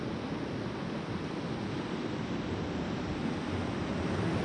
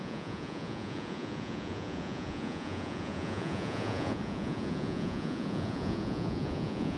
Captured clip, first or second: first